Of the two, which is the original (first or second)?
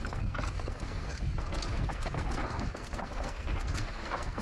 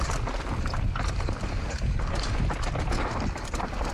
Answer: second